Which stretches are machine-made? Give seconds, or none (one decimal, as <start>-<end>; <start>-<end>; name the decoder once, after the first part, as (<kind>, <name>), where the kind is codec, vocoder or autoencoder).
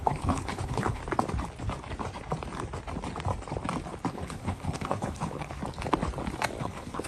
0.0-1.0 (codec, HILCodec); 4.1-5.6; 6.6-7.1